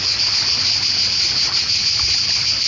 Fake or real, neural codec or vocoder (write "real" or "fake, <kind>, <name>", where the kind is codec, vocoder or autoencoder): real